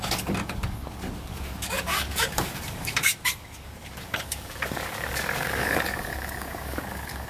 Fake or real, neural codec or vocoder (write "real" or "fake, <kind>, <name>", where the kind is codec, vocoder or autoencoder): fake, codec, DAC